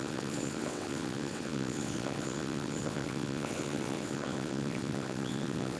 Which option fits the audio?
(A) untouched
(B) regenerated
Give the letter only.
B